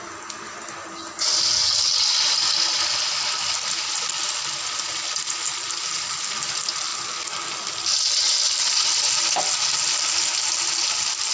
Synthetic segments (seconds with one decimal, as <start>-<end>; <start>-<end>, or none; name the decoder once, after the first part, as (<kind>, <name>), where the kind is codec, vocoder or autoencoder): none